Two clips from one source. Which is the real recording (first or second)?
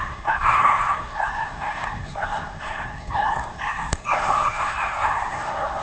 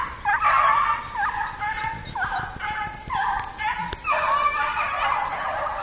second